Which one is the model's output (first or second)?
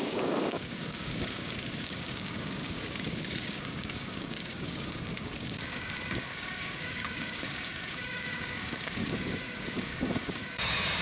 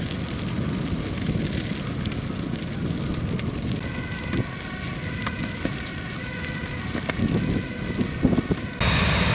first